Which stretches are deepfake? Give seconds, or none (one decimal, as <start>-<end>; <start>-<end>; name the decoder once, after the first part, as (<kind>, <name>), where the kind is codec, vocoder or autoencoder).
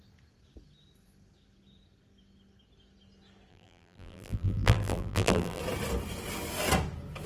3.5-5.6 (vocoder, BigVGAN v2)